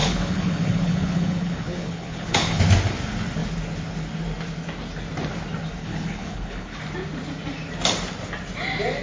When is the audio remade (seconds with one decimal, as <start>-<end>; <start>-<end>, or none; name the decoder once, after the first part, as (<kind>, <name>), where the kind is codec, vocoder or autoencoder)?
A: 0.0-2.6 (codec, HILCodec); 5.8-6.8